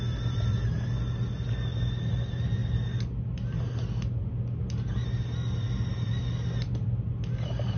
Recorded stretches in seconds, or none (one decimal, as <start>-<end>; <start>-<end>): 0.0-7.8